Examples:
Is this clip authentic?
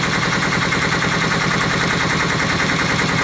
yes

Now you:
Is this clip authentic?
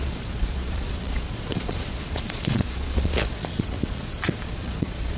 no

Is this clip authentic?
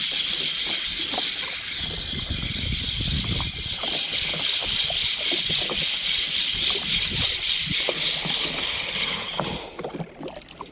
yes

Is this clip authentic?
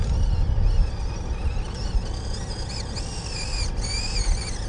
yes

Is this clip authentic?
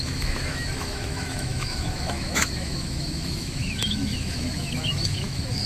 no